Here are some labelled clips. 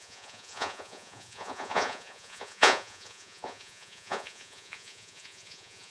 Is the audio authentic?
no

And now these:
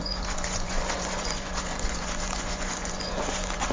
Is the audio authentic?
no